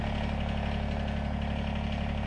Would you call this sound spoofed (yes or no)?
no